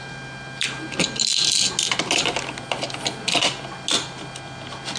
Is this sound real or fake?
real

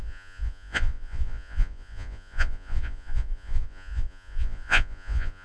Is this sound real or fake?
fake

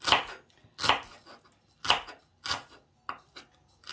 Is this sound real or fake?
real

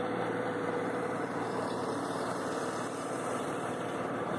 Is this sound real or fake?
fake